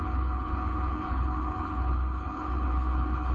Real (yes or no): no